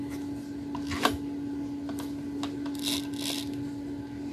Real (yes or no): yes